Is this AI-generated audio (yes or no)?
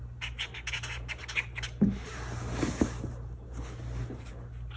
no